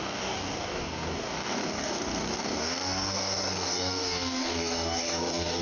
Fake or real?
fake